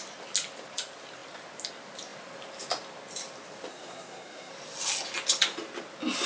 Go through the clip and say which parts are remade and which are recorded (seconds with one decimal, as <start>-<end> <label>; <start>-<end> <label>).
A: 0.0-3.7 recorded; 3.7-4.5 remade; 4.5-6.3 recorded